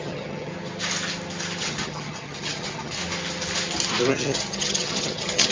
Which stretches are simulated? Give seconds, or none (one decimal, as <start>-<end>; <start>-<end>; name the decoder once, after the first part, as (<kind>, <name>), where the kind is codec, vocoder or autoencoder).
0.0-0.5 (vocoder, HiFi-GAN); 1.6-3.0; 4.1-5.5